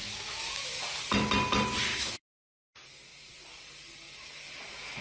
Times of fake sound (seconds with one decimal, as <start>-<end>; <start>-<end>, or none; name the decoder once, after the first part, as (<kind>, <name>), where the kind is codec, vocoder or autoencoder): 0.0-0.8 (autoencoder, DAC-VAE); 1.9-2.7